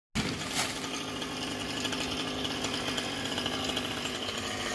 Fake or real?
real